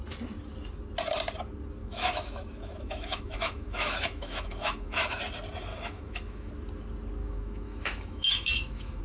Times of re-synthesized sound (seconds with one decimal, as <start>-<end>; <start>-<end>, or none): 1.8-5.2; 5.7-6.5; 7.2-9.0

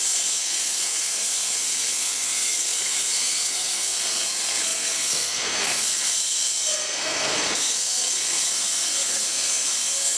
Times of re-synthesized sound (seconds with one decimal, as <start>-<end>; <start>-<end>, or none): 0.0-10.2